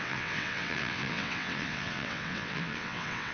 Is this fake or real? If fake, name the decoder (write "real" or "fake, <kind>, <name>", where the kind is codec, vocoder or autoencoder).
fake, vocoder, WaveNeXt